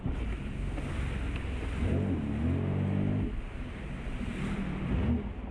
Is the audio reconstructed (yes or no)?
no